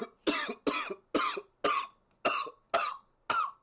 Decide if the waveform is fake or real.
real